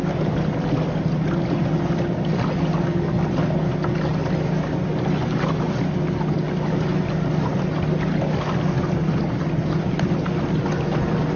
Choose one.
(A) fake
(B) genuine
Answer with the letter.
B